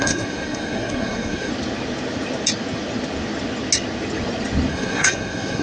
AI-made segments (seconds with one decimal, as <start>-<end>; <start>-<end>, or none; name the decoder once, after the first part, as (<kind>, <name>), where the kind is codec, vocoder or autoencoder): 0.0-1.5 (codec, SNAC); 4.7-5.6